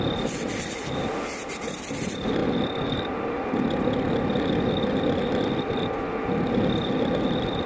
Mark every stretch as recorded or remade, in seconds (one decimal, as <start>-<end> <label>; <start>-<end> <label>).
0.0-7.7 recorded